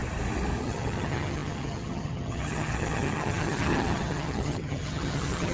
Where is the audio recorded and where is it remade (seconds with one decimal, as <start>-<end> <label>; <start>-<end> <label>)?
0.0-0.6 recorded; 0.6-5.5 remade